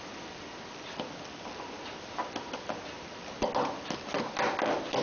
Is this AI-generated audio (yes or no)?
no